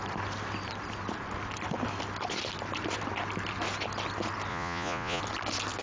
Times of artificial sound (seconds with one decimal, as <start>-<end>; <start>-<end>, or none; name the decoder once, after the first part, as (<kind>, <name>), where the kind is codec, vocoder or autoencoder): 4.5-5.2 (vocoder, Vocos)